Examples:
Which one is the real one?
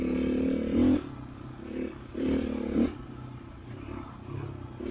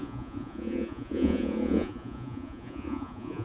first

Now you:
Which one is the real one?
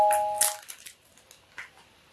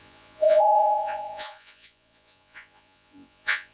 first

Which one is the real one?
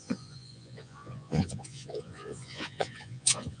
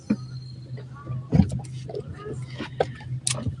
second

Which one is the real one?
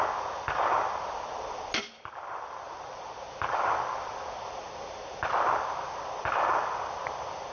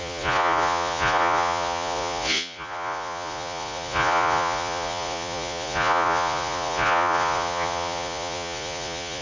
first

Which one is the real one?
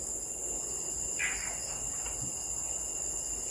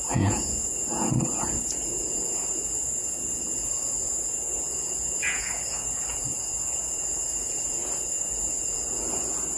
first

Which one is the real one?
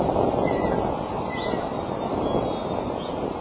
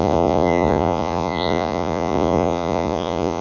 first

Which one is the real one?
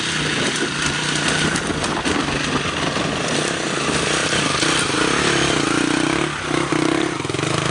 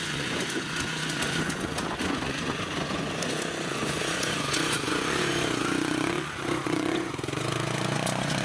first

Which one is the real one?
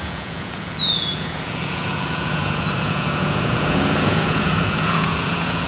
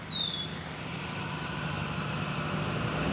second